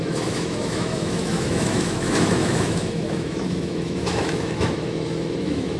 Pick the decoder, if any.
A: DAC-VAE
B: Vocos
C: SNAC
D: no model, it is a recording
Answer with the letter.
A